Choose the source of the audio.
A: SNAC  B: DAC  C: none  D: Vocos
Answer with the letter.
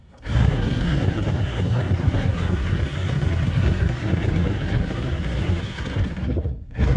A